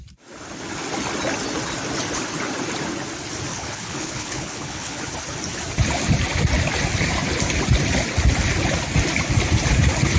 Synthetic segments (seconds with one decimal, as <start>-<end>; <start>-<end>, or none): 3.5-5.0